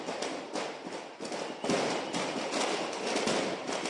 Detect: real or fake real